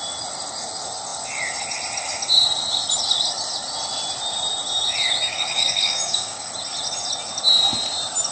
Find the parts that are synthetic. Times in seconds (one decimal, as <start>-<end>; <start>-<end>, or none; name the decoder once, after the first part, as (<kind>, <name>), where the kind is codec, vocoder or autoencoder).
5.3-6.5 (codec, DAC)